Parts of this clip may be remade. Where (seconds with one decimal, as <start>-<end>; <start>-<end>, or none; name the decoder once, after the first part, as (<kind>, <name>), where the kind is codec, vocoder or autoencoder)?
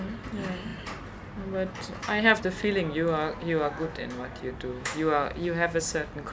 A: 3.4-4.0 (autoencoder, DAC-VAE); 4.7-5.8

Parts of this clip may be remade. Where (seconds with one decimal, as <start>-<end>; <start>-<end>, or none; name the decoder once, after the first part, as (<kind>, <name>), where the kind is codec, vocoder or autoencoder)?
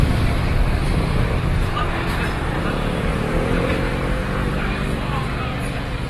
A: 0.8-1.9 (vocoder, BigVGAN v2)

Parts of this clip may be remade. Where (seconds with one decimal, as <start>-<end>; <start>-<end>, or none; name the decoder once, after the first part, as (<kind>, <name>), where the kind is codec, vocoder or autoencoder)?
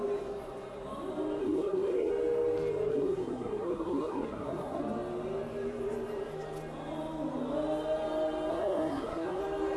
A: 1.4-2.1 (codec, SNAC); 2.9-4.8; 8.5-9.4